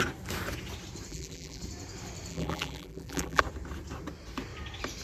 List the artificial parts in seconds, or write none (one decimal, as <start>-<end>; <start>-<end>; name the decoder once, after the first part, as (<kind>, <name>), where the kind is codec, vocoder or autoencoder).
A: 1.1-1.6 (vocoder, BigVGAN v2); 2.3-3.4